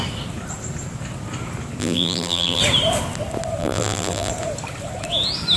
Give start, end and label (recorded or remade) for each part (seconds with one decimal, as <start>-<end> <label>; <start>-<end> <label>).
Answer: 0.0-1.8 recorded; 1.8-2.6 remade; 2.6-3.6 recorded; 3.6-4.3 remade; 4.3-5.6 recorded

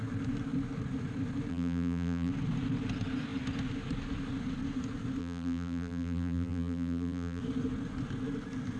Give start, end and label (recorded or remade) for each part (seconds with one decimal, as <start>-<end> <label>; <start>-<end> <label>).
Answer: 0.0-1.5 recorded; 1.5-2.3 remade; 2.3-5.2 recorded; 5.2-7.4 remade; 7.4-8.8 recorded

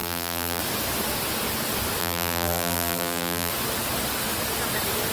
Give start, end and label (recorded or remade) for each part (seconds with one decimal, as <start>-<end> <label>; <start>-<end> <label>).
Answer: 0.0-0.6 remade; 0.6-2.0 recorded; 2.0-3.5 remade; 3.5-5.1 recorded

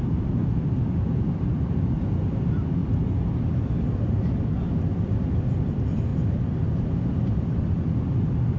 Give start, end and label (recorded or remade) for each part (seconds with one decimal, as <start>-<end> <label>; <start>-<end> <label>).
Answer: 0.0-6.1 remade; 6.1-7.4 recorded; 7.4-8.6 remade

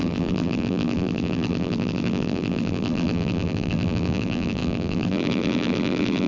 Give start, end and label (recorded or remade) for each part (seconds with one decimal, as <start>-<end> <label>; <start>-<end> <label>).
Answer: 0.0-6.3 remade